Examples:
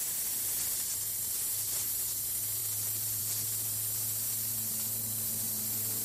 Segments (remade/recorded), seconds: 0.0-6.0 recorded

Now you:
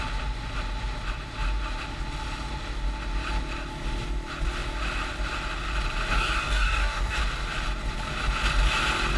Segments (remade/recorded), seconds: 0.0-6.1 recorded; 6.1-7.2 remade; 7.2-9.2 recorded

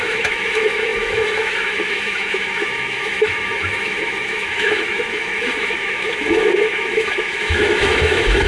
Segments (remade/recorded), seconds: 0.0-8.5 remade

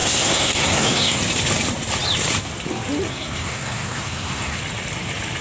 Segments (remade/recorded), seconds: 0.0-1.2 remade; 1.2-3.1 recorded; 3.1-4.6 remade; 4.6-5.4 recorded

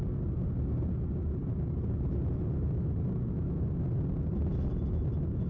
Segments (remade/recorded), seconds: 0.0-5.5 recorded

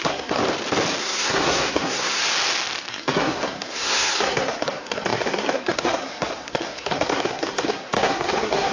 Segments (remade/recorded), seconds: 0.0-0.4 remade; 0.4-1.0 recorded; 1.0-2.2 remade; 2.2-2.9 recorded; 2.9-8.7 remade

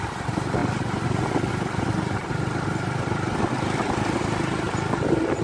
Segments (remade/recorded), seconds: 0.0-5.4 recorded